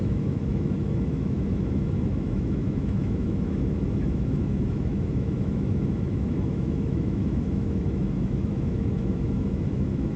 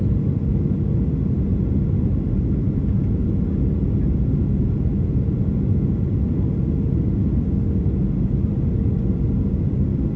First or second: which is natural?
second